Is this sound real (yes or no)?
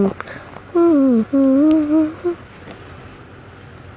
yes